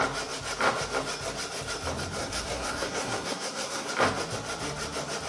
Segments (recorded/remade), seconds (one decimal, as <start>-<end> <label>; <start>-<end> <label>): 0.0-2.2 recorded; 2.2-3.9 remade; 3.9-5.3 recorded